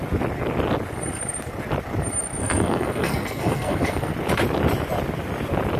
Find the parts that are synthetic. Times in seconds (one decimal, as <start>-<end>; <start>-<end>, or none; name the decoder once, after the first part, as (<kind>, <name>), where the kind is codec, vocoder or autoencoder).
2.4-4.1 (codec, SNAC)